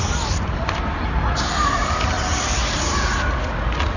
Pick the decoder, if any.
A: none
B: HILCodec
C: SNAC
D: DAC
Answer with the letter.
A